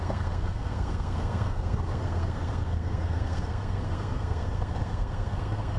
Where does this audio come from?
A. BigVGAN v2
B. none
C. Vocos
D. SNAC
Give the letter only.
D